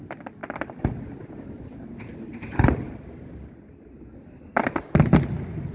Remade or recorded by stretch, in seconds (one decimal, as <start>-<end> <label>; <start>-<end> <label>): 0.0-0.4 recorded; 0.4-2.9 remade; 2.9-5.7 recorded